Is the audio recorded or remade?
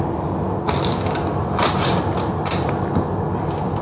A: recorded